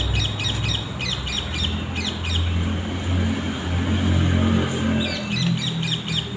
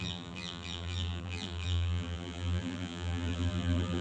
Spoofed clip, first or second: second